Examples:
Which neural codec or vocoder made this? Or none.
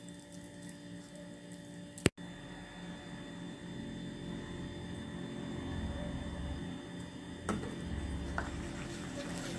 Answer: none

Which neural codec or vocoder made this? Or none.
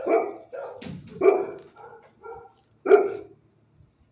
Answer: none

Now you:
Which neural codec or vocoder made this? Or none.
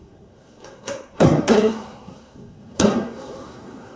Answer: codec, SNAC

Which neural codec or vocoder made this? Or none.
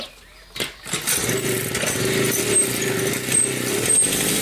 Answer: none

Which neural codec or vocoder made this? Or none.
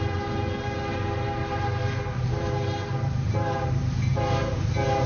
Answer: vocoder, BigVGAN v2